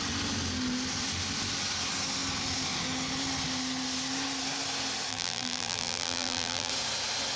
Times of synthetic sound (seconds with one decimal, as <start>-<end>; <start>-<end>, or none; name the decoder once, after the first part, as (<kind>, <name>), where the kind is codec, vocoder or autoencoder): 5.1-6.7 (vocoder, BigVGAN v2)